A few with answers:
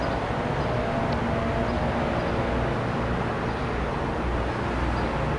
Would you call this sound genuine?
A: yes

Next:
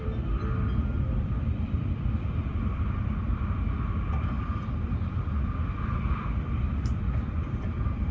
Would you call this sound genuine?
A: no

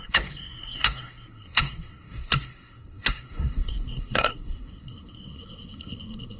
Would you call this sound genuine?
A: no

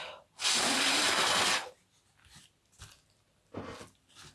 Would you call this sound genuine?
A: yes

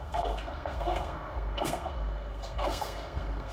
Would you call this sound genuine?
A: no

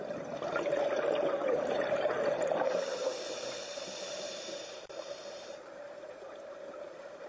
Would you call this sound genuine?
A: no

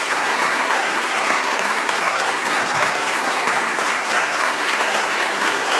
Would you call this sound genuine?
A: no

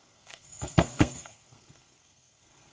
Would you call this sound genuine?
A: no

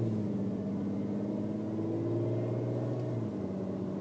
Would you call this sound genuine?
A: yes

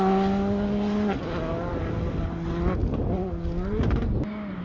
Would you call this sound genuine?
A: yes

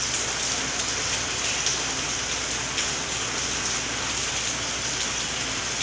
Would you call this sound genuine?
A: yes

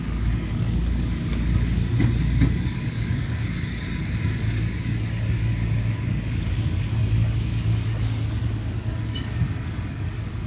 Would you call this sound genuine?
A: no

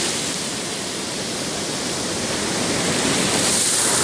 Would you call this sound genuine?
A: yes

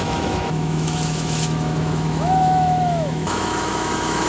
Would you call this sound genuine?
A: no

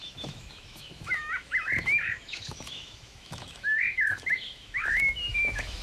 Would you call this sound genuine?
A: no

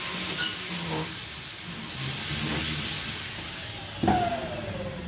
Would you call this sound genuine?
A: yes